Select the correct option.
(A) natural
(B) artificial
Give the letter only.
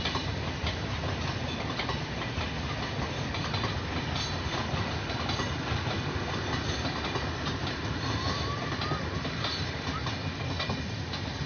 A